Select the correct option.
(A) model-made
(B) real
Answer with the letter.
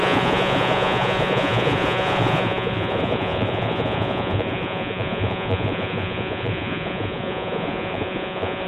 A